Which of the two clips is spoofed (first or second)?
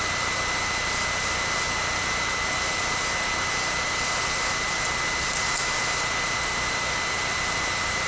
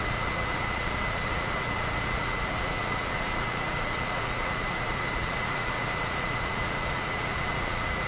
second